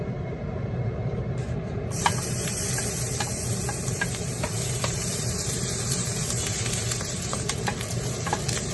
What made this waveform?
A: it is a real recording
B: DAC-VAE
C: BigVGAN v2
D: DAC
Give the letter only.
C